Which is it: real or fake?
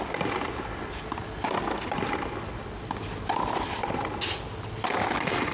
real